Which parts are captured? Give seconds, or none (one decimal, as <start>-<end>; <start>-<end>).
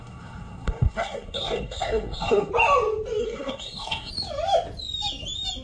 2.5-3.2; 4.1-5.6